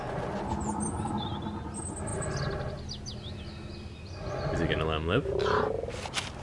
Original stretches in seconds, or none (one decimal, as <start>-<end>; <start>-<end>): 0.0-6.4